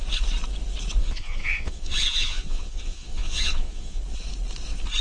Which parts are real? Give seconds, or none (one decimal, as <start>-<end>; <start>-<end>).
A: 0.0-1.0; 4.0-5.0